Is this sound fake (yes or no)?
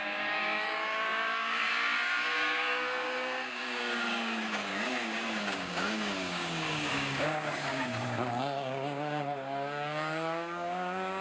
yes